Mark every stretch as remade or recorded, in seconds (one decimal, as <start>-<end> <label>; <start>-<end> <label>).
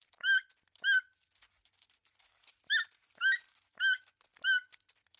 0.0-5.2 recorded